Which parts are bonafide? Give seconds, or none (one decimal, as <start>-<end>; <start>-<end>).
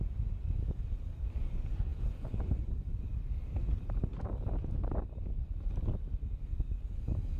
0.0-1.9; 2.5-7.4